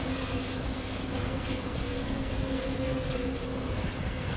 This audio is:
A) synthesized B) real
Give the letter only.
A